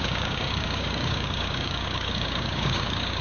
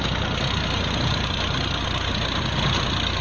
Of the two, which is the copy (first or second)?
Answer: first